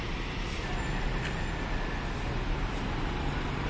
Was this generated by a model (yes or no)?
no